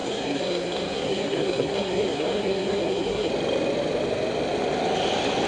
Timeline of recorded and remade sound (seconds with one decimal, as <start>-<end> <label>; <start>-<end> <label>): 0.0-3.3 remade; 3.3-5.5 recorded